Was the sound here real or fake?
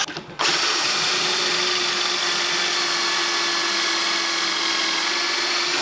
real